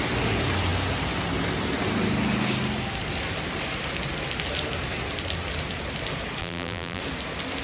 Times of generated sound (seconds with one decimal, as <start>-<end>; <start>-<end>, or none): 6.4-7.0